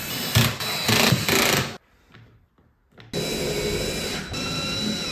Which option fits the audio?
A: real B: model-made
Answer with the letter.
A